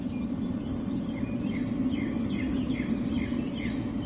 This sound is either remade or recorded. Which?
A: recorded